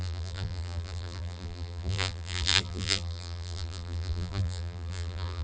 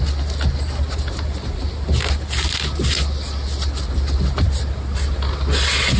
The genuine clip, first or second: second